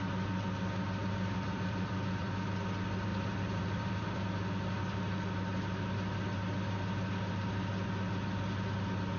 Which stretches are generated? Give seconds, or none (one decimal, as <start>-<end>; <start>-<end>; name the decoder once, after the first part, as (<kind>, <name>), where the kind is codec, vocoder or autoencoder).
1.0-2.3 (vocoder, BigVGAN v2); 3.1-4.2